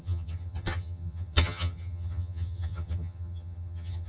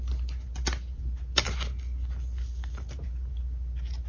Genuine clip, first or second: second